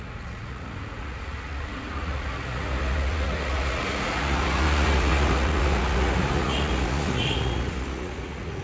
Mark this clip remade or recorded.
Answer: remade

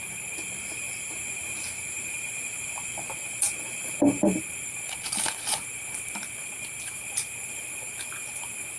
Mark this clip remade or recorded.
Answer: remade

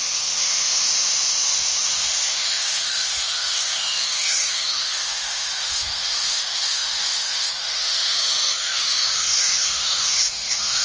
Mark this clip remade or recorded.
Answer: remade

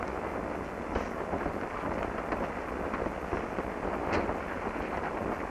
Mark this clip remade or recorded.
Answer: recorded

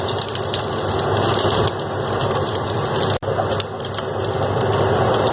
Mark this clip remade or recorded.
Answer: recorded